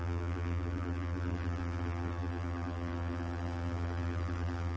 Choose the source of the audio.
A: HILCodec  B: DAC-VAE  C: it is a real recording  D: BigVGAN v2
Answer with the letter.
D